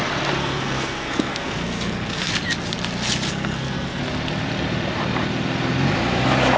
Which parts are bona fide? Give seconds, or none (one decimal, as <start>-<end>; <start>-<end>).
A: 0.0-0.4; 2.3-3.3; 4.0-6.6